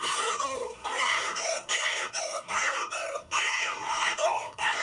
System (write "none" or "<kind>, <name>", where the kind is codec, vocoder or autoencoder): codec, SNAC